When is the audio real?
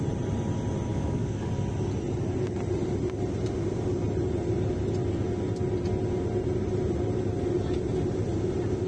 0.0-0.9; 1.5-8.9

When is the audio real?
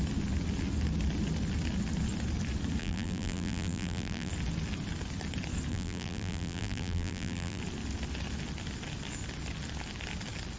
0.0-2.8; 4.3-5.7; 7.6-10.6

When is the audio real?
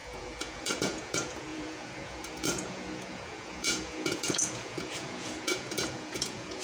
none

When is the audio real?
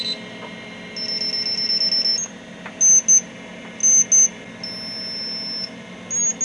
0.0-6.4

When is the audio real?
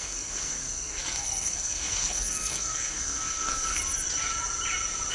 3.8-5.1